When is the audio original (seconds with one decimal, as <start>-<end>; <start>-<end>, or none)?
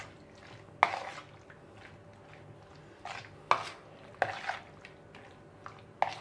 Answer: 0.0-6.2